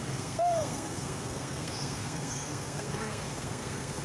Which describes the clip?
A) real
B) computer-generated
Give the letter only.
B